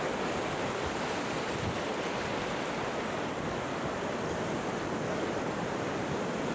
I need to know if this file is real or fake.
real